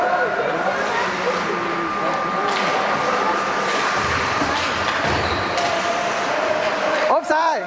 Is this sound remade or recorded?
remade